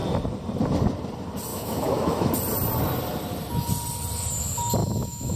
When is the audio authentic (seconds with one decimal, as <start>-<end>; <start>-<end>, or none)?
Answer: 0.0-1.5; 2.3-4.8